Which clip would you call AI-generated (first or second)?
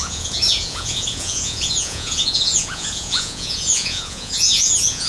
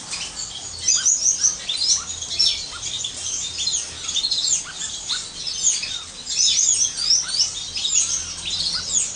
first